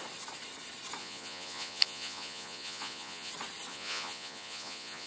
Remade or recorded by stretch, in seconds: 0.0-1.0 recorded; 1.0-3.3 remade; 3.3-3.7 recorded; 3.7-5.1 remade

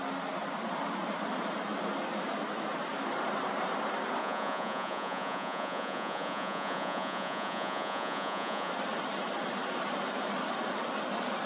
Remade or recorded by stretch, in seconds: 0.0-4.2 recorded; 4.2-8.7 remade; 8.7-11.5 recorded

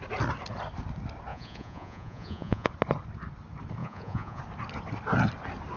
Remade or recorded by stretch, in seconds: 0.0-1.3 recorded; 1.3-2.7 remade; 2.7-3.8 recorded; 3.8-4.4 remade; 4.4-5.8 recorded

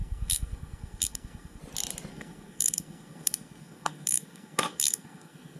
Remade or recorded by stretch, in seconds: 0.0-1.6 remade; 1.6-2.1 recorded; 2.1-5.6 remade

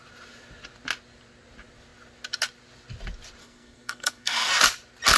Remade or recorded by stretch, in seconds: 0.0-3.4 recorded; 3.4-4.5 remade; 4.5-5.2 recorded

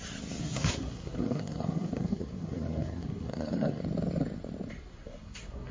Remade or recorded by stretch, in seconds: 0.0-0.4 recorded; 0.4-3.8 remade; 3.8-4.9 recorded; 4.9-5.7 remade

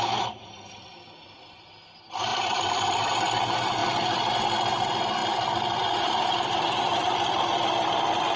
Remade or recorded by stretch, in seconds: 0.0-8.4 recorded

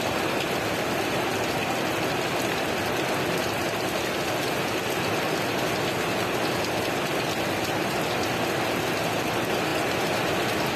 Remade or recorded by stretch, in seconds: 0.0-10.8 recorded